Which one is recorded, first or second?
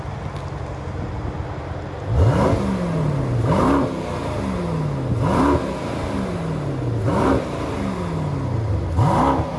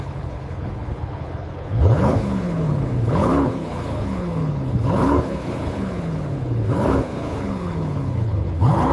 first